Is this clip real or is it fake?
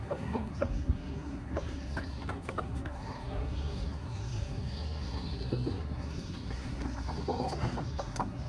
fake